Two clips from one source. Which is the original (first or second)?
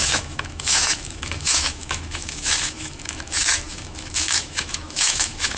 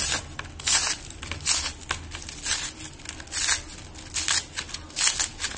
second